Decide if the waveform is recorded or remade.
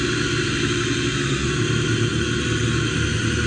recorded